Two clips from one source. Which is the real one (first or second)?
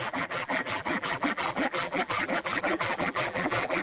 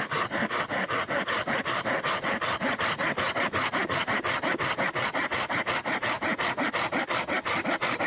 second